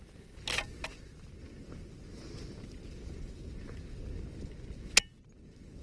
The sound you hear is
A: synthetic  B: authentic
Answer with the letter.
B